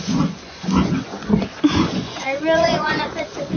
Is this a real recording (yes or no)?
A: no